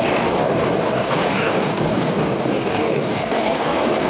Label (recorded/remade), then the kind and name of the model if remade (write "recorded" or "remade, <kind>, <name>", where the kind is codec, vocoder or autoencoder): remade, codec, DAC